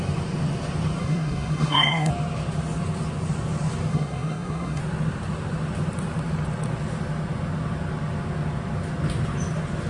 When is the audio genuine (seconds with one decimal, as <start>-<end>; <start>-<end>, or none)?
0.0-1.0; 2.1-3.9; 4.8-9.9